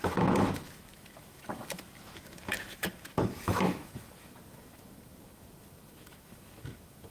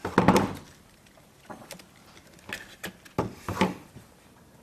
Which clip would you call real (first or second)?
second